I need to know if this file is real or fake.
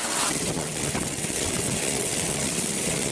fake